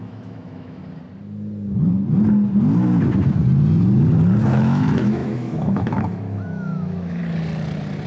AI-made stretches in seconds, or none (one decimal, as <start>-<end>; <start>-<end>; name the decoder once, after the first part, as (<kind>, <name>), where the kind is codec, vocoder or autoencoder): 0.0-0.8 (autoencoder, DAC-VAE); 4.4-7.2

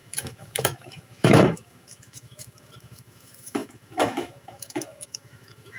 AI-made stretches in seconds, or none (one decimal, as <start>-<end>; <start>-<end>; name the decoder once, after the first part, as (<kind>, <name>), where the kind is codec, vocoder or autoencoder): 0.0-5.8 (autoencoder, DAC-VAE)